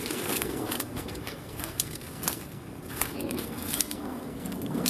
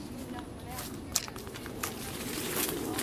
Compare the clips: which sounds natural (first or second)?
second